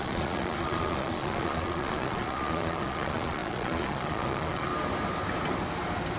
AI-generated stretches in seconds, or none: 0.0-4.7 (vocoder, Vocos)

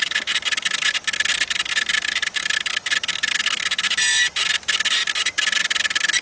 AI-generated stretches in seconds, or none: none

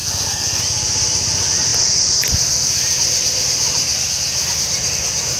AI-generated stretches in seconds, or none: 0.0-0.6 (codec, SNAC)

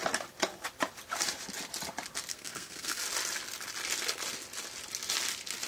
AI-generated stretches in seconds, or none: 2.3-3.0 (codec, SNAC)

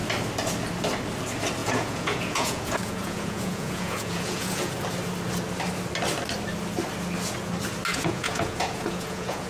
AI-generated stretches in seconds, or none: 1.6-4.8 (vocoder, Vocos); 7.9-9.5

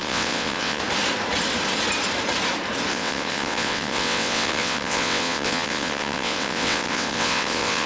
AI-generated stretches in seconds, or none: 0.0-0.8 (vocoder, WaveNeXt); 2.9-7.9